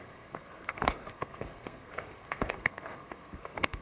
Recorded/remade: remade